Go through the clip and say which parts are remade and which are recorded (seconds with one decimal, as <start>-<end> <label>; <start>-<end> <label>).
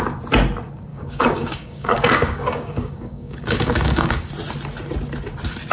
0.0-0.9 recorded; 0.9-4.3 remade; 4.3-5.7 recorded